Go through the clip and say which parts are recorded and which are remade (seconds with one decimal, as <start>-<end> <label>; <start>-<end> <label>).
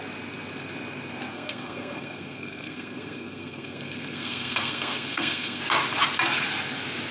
0.0-1.3 recorded; 1.3-5.6 remade; 5.6-7.1 recorded